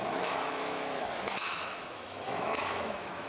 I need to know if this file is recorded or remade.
remade